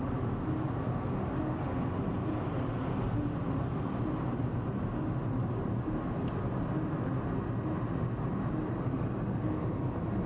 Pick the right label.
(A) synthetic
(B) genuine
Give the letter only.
B